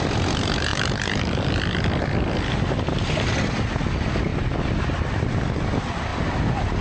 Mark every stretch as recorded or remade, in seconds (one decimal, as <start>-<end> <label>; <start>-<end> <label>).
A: 0.0-6.8 recorded